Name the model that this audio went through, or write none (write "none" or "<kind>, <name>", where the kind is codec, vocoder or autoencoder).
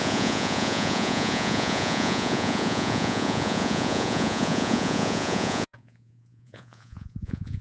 vocoder, Vocos